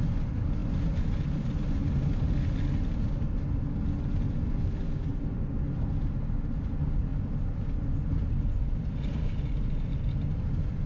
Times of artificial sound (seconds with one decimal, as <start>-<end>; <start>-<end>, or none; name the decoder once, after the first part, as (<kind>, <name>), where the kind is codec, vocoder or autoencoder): none